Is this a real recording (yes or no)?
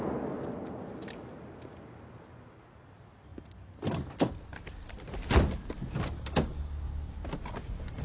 yes